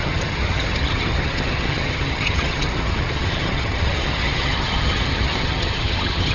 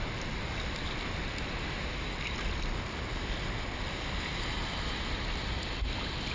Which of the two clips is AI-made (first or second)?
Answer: first